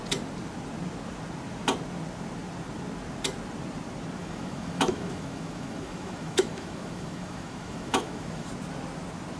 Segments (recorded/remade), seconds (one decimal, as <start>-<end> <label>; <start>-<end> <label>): 0.0-4.2 recorded; 4.2-8.5 remade; 8.5-9.4 recorded